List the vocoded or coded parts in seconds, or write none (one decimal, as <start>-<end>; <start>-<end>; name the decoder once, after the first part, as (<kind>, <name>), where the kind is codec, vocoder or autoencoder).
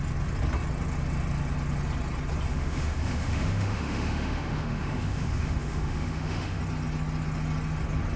2.5-6.6 (autoencoder, DAC-VAE)